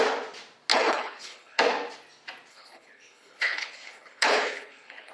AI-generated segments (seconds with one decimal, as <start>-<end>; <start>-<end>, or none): 0.7-1.6; 2.5-5.1